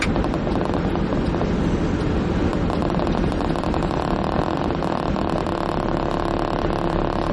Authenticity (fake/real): real